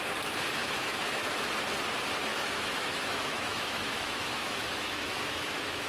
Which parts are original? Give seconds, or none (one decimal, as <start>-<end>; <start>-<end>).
0.0-0.6; 1.5-2.3